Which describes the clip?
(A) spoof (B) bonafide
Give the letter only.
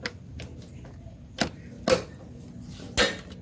B